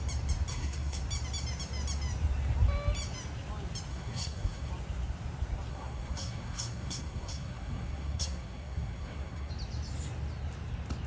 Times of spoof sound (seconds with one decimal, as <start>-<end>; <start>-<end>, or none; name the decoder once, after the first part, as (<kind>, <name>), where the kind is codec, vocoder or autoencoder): 0.5-1.0 (codec, SNAC); 3.9-4.7; 5.7-9.5